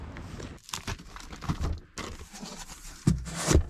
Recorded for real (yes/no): yes